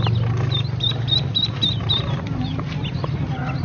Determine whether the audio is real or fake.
real